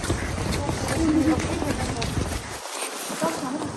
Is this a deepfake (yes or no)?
yes